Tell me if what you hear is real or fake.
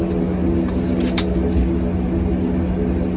real